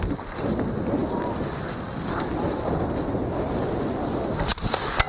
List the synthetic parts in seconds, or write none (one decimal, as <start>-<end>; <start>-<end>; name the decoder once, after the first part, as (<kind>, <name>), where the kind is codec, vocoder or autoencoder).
none